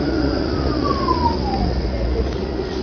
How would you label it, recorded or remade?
remade